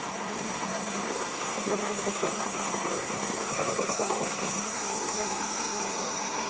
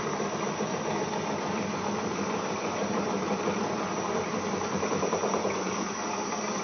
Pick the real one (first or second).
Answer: second